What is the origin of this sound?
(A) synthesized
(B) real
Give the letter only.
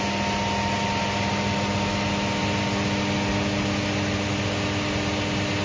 B